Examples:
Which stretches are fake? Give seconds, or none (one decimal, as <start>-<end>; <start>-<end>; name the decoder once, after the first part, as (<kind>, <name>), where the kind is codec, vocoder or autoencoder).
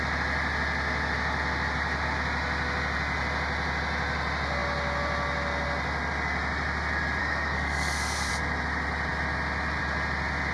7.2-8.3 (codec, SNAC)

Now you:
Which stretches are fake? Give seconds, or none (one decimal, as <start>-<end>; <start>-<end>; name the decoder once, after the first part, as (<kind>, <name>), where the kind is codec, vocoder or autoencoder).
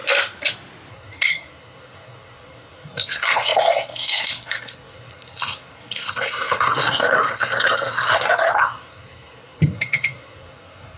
0.9-11.0 (codec, SNAC)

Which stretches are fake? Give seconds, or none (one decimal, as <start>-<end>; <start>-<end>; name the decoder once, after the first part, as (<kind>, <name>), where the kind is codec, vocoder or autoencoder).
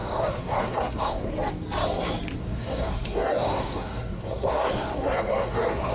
0.0-1.3 (codec, SNAC); 2.4-5.9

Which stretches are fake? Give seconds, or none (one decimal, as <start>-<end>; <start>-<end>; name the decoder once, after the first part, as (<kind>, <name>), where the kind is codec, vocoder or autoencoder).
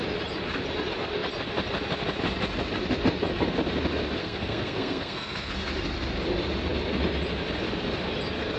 4.2-5.5 (codec, SNAC)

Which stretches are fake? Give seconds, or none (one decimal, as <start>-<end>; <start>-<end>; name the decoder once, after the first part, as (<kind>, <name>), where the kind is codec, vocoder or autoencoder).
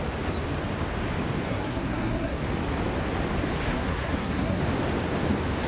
1.5-2.4 (codec, SNAC); 3.7-4.6